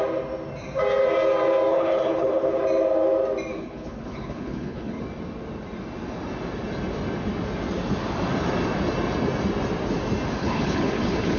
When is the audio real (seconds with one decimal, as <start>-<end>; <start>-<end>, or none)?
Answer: 0.0-1.7; 2.6-3.5; 5.0-10.4